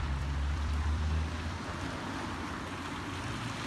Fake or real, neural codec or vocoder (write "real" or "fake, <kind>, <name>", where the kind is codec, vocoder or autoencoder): fake, vocoder, BigVGAN v2